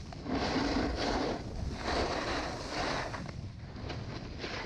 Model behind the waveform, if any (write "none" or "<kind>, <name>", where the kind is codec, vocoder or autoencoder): none